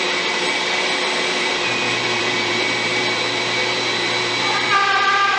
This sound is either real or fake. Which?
fake